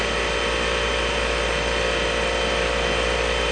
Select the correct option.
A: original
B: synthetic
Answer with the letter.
A